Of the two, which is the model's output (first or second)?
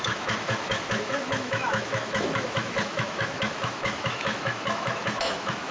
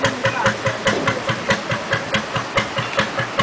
first